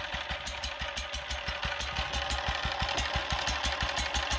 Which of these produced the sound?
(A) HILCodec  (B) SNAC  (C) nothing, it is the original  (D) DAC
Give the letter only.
C